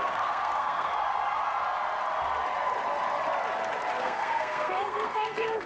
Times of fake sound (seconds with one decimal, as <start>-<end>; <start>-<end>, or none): 0.0-0.9; 4.0-5.7